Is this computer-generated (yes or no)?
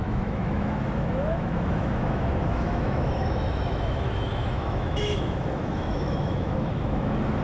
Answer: yes